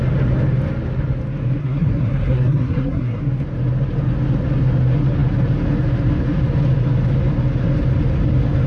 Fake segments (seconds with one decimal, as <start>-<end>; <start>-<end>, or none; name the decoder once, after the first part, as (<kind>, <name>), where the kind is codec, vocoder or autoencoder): 1.6-3.2 (codec, SNAC)